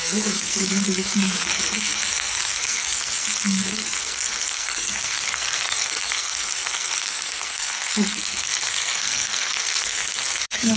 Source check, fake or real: fake